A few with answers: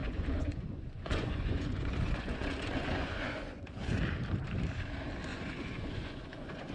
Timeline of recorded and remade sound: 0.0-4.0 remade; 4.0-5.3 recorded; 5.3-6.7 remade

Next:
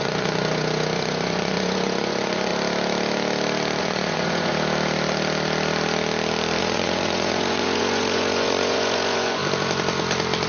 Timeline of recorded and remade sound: 0.0-2.5 remade; 2.5-3.8 recorded; 3.8-4.5 remade; 4.5-6.6 recorded; 6.6-9.4 remade; 9.4-10.5 recorded

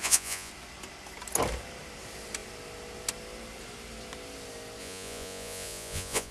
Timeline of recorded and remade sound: 0.0-0.5 remade; 0.5-4.8 recorded; 4.8-6.3 remade

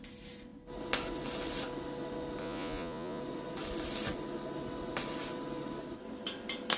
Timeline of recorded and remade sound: 0.0-2.4 recorded; 2.4-3.2 remade; 3.2-6.8 recorded

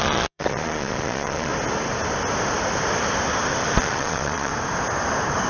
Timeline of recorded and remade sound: 0.0-1.5 remade; 1.5-3.8 recorded; 3.8-4.5 remade; 4.5-5.5 recorded

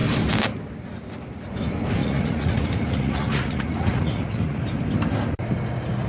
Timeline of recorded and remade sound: 0.0-2.0 recorded; 2.0-4.6 remade; 4.6-6.1 recorded

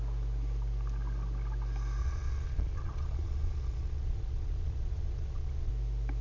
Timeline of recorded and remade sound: 0.0-2.0 recorded; 2.0-5.7 remade; 5.7-6.2 recorded

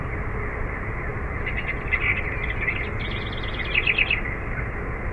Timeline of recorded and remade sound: 0.0-5.1 recorded